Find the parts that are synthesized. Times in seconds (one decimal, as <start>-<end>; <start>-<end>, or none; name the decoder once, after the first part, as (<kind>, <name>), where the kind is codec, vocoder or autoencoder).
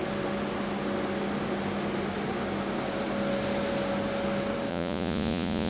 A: 4.7-5.7 (vocoder, Vocos)